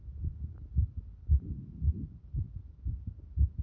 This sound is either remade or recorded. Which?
recorded